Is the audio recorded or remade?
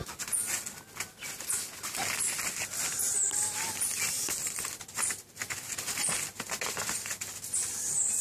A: recorded